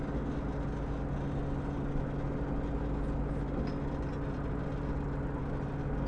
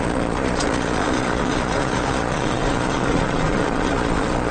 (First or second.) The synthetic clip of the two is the second